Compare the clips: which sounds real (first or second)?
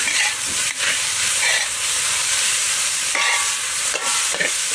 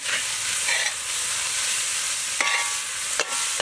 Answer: second